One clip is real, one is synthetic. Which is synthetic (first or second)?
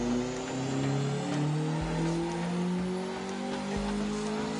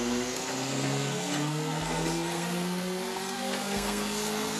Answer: second